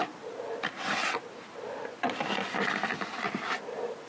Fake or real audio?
real